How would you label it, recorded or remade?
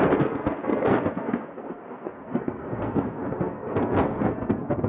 remade